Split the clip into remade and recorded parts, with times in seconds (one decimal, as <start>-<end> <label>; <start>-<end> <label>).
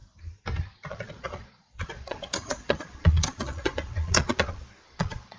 0.0-0.9 recorded; 0.9-5.4 remade